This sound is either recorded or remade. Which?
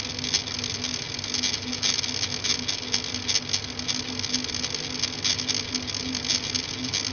recorded